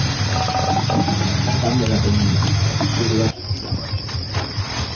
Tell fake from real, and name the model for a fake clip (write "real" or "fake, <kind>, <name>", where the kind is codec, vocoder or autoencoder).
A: real